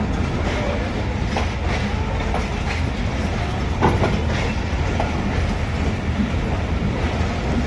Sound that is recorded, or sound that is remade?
recorded